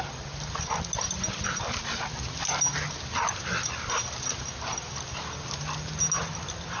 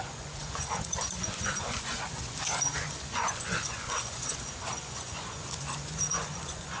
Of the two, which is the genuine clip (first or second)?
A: first